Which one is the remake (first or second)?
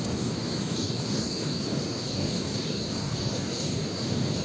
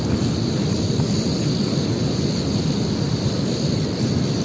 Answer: first